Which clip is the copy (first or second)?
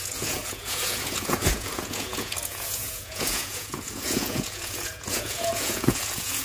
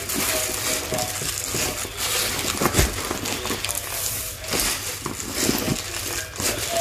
first